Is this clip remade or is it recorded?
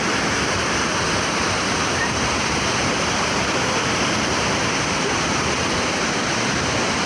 recorded